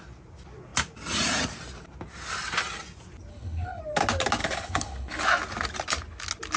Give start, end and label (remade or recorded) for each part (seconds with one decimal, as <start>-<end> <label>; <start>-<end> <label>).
0.0-3.3 recorded; 3.3-3.8 remade; 3.8-4.4 recorded; 4.4-5.2 remade; 5.2-6.6 recorded